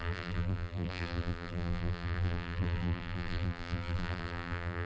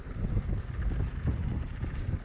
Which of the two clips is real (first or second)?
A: second